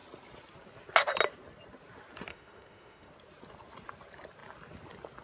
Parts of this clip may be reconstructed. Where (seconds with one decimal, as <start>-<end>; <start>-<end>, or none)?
2.3-3.1